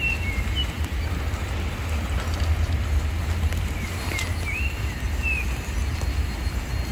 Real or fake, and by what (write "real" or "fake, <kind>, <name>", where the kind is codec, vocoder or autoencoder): real